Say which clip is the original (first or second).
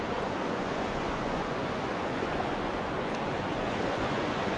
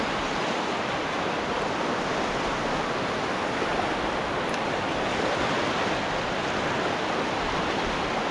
second